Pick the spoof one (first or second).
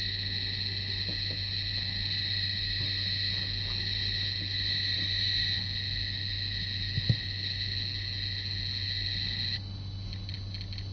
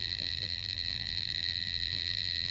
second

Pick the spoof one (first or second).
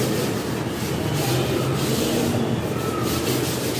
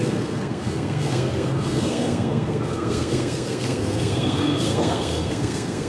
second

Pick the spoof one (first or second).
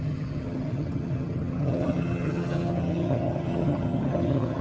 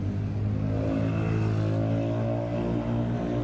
first